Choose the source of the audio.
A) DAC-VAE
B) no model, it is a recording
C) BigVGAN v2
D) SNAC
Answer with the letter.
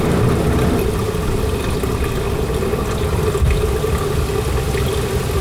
B